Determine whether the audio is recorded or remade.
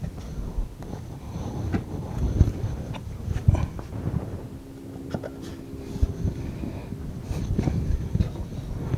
recorded